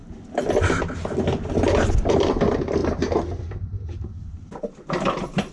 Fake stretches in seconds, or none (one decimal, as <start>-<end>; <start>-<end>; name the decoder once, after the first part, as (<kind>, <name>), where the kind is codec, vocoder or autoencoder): none